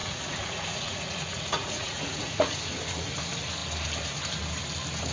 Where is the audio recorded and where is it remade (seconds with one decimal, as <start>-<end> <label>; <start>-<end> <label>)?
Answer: 0.0-3.1 remade; 3.1-5.1 recorded